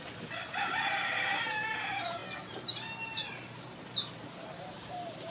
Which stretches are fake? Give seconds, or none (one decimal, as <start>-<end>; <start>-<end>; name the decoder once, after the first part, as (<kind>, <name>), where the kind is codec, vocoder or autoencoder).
0.0-2.2 (vocoder, BigVGAN v2); 3.9-5.3